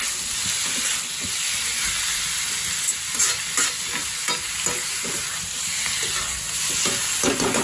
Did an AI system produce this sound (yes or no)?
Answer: no